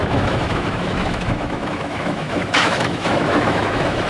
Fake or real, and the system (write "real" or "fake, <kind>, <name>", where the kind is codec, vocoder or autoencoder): fake, autoencoder, DAC-VAE